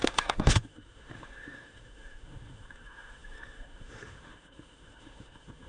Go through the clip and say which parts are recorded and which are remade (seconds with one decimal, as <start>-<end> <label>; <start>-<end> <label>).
0.0-5.7 remade